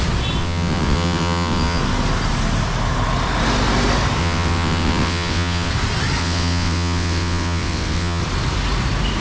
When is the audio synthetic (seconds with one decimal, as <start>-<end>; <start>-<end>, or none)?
0.4-1.8; 4.2-5.7; 6.2-8.2